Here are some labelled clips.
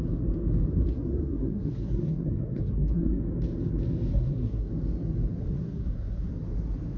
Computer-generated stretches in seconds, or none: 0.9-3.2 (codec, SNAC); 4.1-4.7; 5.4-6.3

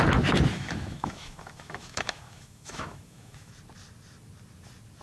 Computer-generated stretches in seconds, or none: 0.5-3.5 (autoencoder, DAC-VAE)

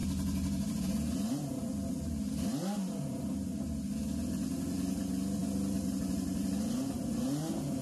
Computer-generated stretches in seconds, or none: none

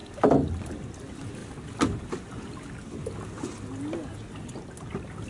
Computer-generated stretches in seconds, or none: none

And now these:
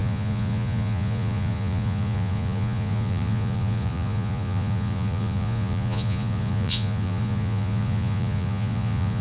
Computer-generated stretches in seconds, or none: 0.0-9.2 (vocoder, Vocos)

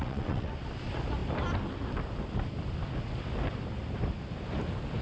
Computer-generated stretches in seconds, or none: 0.0-0.5 (vocoder, WaveNeXt)

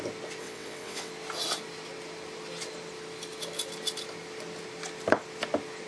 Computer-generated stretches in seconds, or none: 0.4-1.1 (vocoder, WaveNeXt)

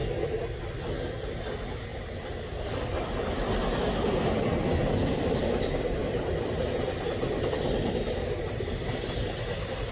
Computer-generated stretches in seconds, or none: 1.9-2.7 (vocoder, BigVGAN v2); 4.8-5.4; 6.0-6.6